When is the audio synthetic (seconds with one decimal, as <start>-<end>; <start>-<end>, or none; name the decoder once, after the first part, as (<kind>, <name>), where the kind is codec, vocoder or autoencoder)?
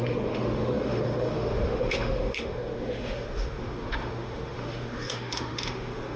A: 0.0-6.2 (autoencoder, DAC-VAE)